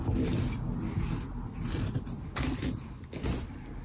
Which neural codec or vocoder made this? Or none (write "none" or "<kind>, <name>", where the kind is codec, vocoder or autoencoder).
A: none